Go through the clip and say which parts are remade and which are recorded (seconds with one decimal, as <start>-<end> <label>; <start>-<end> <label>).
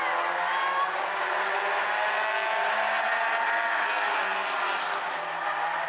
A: 0.0-5.9 recorded